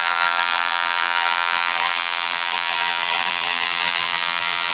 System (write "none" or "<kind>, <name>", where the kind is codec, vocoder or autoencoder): vocoder, BigVGAN v2